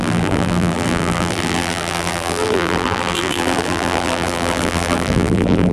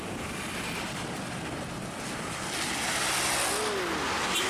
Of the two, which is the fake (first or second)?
first